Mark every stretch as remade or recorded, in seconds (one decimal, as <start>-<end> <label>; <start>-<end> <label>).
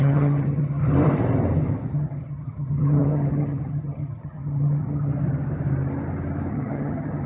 0.0-0.8 remade; 0.8-1.9 recorded; 1.9-5.1 remade; 5.1-6.5 recorded; 6.5-7.3 remade